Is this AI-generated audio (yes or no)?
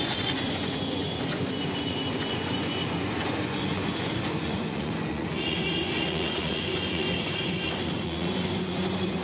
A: yes